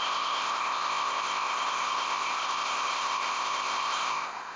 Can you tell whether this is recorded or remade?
remade